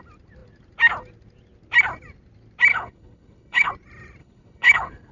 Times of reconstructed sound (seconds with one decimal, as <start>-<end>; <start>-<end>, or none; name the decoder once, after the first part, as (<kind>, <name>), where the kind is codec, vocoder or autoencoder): 2.7-3.7 (codec, HILCodec); 4.2-5.1